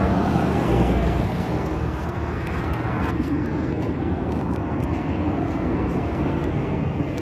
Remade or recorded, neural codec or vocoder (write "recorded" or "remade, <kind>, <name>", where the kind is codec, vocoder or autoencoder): remade, codec, SNAC